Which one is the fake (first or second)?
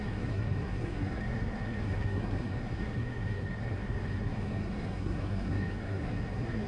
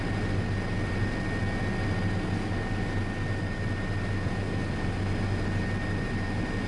first